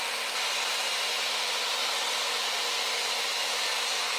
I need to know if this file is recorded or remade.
remade